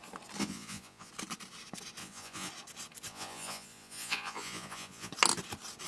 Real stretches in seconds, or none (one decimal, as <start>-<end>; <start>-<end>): 0.0-0.4; 1.1-2.0; 2.5-3.1; 5.1-5.9